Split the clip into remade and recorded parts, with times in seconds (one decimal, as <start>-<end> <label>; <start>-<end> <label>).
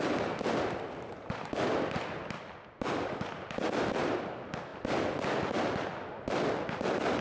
0.0-7.2 recorded